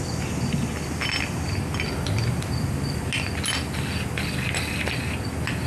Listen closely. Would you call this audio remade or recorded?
recorded